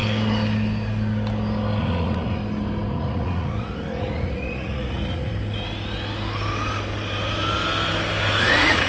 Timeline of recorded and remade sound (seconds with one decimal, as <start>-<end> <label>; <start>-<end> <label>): 0.0-1.8 recorded; 1.8-2.4 remade; 2.4-2.9 recorded; 2.9-5.3 remade; 5.3-8.4 recorded; 8.4-8.9 remade